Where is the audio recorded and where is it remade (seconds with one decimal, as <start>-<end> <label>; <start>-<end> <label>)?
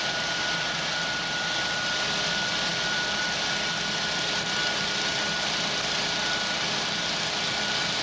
0.0-8.0 recorded